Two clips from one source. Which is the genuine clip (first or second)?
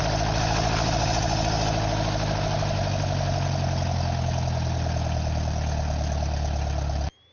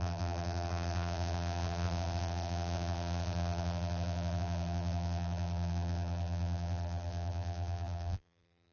first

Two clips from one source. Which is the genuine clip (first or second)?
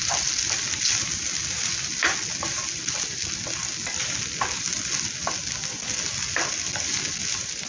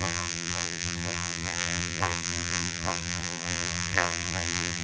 first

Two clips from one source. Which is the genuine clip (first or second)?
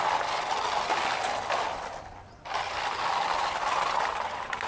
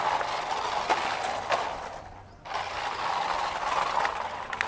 second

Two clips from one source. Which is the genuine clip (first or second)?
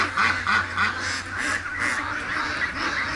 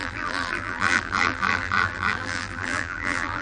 first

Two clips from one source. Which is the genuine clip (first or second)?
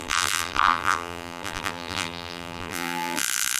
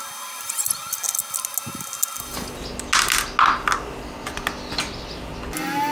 second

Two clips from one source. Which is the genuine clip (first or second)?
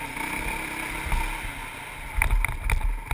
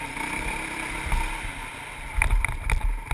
first